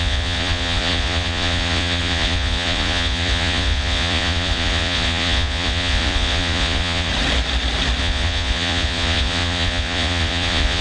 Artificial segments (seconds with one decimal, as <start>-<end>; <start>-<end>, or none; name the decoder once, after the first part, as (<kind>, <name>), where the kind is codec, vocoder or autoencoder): 0.0-7.1 (vocoder, Vocos); 8.0-10.8